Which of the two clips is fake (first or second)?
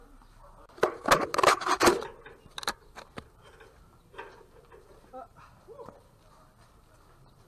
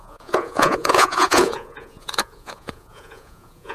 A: second